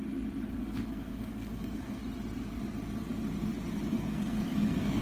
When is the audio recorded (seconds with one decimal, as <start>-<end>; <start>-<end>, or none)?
0.0-0.6; 2.0-3.9